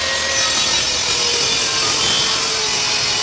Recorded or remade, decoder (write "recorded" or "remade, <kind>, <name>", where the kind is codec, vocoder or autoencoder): recorded